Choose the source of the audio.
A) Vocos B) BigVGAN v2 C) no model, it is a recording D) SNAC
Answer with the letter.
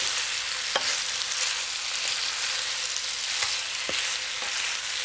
C